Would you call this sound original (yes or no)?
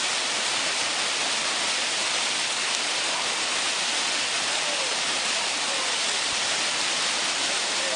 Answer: yes